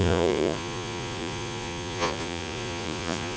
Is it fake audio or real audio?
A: fake